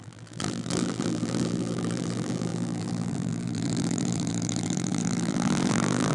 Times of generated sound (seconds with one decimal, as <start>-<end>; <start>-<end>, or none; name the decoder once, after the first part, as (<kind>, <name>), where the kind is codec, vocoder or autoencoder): 0.0-6.1 (vocoder, BigVGAN v2)